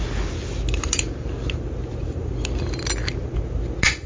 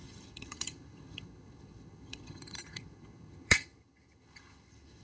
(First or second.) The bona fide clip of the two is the first